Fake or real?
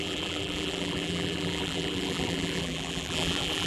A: fake